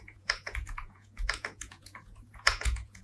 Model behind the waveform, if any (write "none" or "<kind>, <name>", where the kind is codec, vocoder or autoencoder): vocoder, Vocos